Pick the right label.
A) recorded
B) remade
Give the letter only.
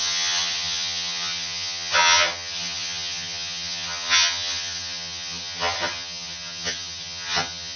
B